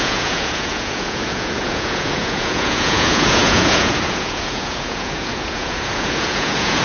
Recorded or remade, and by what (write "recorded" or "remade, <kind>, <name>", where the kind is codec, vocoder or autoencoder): remade, vocoder, Vocos